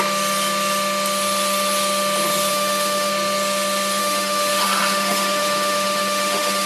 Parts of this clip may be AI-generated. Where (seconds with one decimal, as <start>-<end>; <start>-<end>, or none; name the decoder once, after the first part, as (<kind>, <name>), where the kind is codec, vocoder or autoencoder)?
2.5-3.1 (autoencoder, DAC-VAE); 4.0-6.7